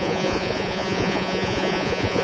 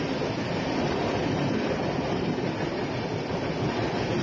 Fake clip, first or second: first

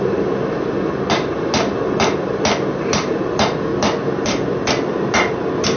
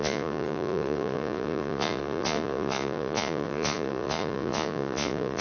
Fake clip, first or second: second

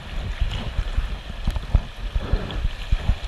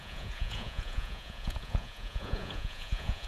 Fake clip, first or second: second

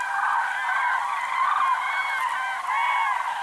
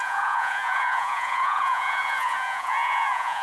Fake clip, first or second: second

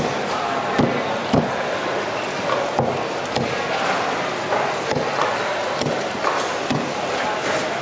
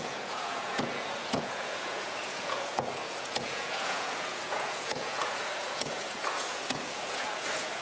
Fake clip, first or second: second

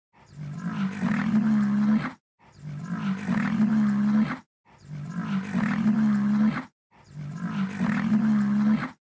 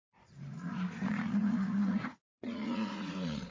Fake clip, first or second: second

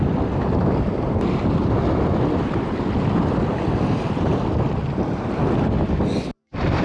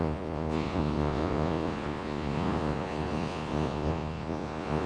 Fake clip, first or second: second